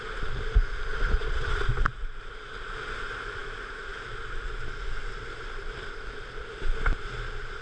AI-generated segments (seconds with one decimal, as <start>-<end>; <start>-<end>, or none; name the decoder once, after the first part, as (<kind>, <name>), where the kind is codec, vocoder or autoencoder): 0.9-1.6 (vocoder, Vocos)